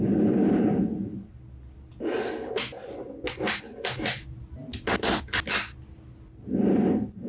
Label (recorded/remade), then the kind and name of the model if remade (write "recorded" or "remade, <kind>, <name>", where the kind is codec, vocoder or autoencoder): recorded